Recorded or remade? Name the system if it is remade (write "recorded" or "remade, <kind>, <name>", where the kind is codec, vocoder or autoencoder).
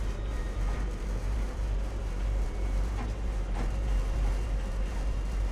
remade, vocoder, BigVGAN v2